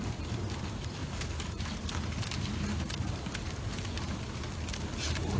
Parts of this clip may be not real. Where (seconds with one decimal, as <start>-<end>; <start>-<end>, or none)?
none